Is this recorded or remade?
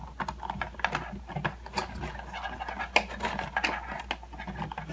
recorded